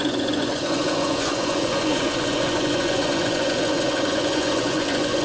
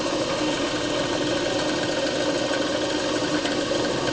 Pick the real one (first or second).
second